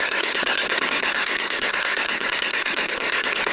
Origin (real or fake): fake